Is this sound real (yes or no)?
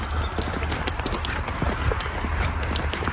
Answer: yes